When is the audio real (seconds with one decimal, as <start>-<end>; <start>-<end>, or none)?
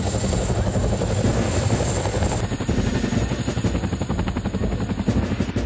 0.0-1.3; 2.9-5.7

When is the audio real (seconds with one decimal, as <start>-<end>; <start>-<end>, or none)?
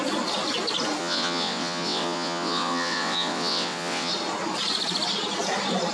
0.0-1.0; 4.1-5.9